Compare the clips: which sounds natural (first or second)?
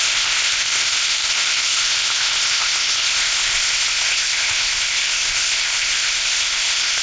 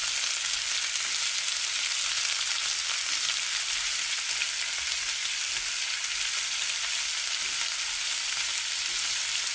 second